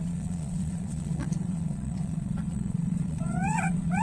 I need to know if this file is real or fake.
fake